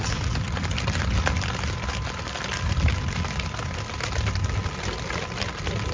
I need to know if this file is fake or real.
real